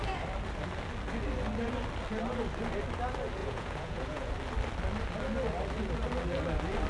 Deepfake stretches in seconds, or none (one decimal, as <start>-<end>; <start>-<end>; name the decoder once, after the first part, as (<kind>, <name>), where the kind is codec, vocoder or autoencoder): 3.4-4.3 (vocoder, Vocos)